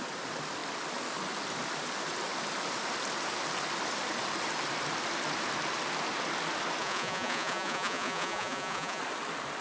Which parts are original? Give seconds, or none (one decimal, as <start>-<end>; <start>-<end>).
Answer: 0.0-6.8; 9.0-9.6